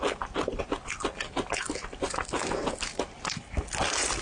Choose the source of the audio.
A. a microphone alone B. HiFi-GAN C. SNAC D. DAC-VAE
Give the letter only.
A